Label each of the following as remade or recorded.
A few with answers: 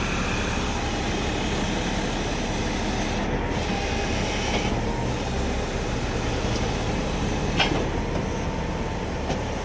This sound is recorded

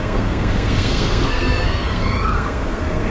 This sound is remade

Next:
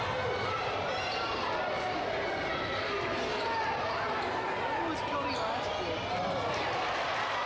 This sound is recorded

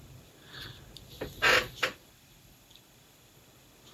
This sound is recorded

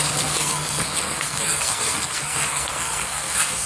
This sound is remade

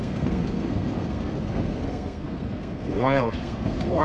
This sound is remade